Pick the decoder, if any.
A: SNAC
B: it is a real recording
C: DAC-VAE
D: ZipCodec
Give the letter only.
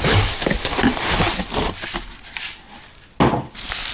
B